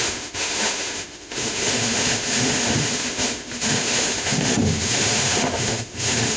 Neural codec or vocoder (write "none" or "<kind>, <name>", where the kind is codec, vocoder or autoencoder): autoencoder, DAC-VAE